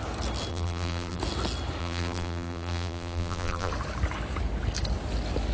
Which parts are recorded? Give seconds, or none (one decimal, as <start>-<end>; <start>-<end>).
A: 0.0-0.5; 1.2-1.8; 3.7-5.5